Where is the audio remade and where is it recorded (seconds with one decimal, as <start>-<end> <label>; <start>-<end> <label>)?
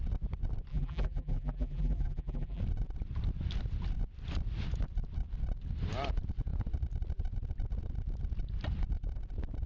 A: 0.0-0.7 recorded; 0.7-2.6 remade; 2.6-9.7 recorded